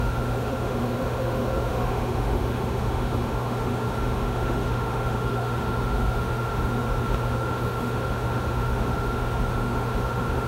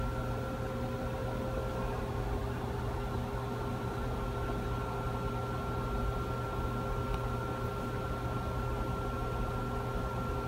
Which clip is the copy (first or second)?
first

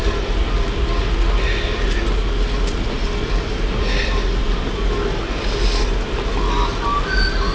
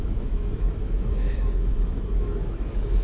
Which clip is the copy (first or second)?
second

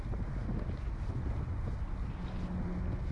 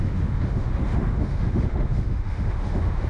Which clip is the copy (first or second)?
second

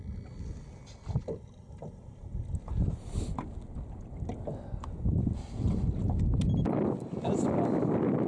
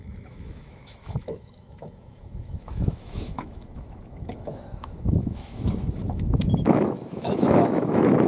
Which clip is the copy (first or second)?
second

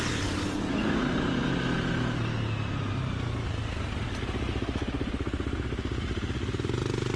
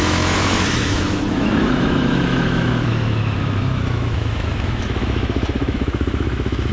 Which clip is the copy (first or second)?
second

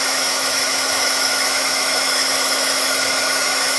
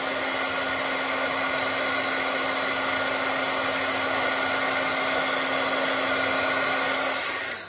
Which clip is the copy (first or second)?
first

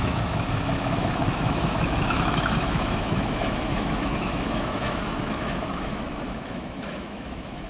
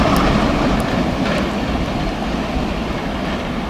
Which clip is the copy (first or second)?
first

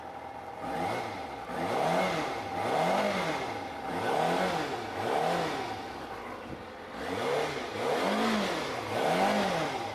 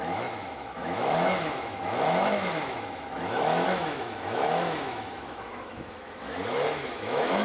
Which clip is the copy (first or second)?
second